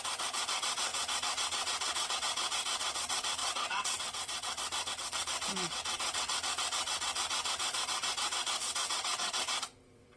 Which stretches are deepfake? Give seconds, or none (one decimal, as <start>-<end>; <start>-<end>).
0.0-10.2